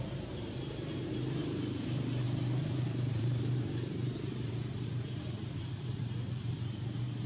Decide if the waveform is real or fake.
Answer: fake